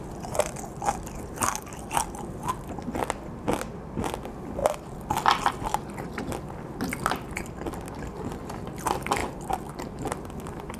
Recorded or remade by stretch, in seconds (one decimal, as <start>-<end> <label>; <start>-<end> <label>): 0.0-9.2 recorded; 9.2-10.0 remade; 10.0-10.8 recorded